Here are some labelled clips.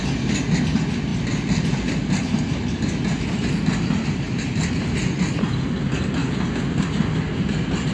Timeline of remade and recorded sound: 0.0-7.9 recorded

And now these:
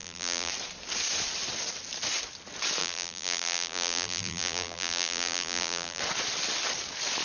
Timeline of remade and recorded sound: 0.0-0.5 remade; 0.5-2.8 recorded; 2.8-6.0 remade; 6.0-7.2 recorded